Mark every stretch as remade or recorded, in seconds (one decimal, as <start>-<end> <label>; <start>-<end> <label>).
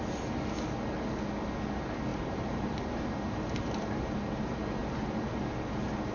0.0-2.1 recorded; 2.1-4.0 remade; 4.0-4.8 recorded; 4.8-5.4 remade; 5.4-6.1 recorded